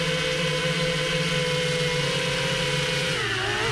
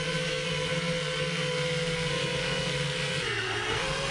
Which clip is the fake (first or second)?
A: second